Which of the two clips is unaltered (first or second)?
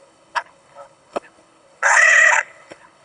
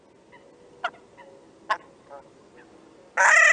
second